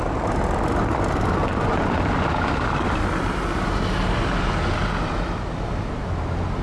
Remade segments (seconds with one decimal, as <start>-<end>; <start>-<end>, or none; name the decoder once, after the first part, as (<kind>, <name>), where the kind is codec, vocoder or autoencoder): 1.4-2.0 (vocoder, Vocos)